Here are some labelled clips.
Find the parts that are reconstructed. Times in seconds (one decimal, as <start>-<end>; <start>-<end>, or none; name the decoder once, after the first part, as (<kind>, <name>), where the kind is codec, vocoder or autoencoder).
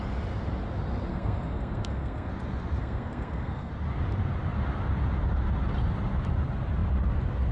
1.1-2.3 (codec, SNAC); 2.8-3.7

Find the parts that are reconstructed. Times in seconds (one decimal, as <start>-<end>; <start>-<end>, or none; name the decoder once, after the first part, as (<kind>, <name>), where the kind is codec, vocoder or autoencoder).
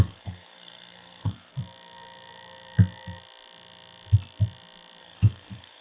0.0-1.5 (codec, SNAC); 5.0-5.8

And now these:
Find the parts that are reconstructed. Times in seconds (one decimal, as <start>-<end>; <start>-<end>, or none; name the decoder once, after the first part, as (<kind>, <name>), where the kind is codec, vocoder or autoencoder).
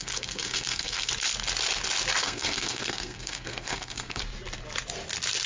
0.0-1.1 (codec, SNAC); 2.2-4.2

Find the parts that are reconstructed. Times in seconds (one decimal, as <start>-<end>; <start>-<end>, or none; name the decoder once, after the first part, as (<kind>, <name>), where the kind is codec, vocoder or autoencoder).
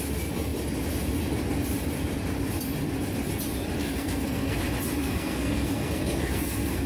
3.8-4.6 (codec, SNAC); 5.0-6.9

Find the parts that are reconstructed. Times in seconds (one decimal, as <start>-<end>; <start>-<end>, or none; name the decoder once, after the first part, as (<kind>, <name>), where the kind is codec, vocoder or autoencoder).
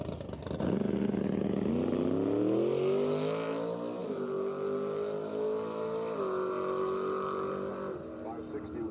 none